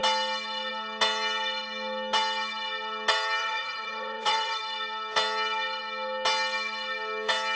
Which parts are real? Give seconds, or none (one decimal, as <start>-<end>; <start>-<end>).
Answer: 0.0-3.4; 4.6-7.6